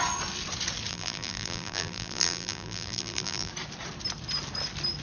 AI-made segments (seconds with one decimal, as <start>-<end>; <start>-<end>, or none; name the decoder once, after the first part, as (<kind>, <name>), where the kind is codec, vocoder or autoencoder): 0.9-3.5 (vocoder, BigVGAN v2)